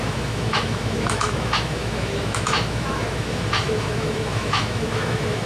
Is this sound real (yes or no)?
no